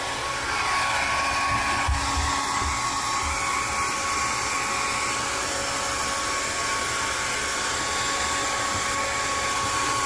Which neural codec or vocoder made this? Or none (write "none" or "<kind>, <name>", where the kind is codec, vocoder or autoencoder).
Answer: none